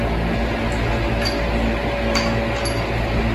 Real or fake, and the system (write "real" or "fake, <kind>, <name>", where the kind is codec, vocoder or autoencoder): real